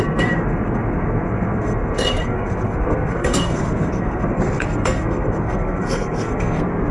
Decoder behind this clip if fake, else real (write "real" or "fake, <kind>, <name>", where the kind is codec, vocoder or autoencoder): fake, codec, SNAC